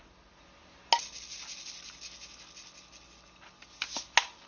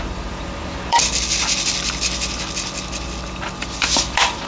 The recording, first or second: first